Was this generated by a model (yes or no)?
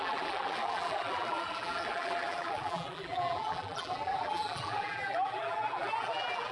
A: yes